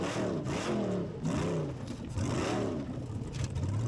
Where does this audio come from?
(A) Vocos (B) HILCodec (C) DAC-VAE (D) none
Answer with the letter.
D